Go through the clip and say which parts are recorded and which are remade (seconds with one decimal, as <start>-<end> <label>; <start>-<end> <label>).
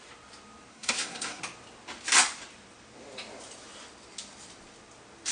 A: 0.0-0.7 recorded; 0.7-1.4 remade; 1.4-5.3 recorded